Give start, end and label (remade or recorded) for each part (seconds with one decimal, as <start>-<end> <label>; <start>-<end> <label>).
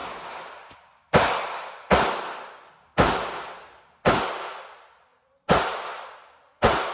0.0-6.9 recorded